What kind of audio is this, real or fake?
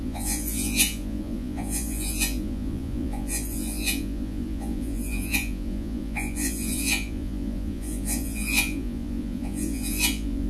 fake